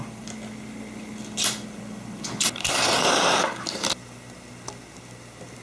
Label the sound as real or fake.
real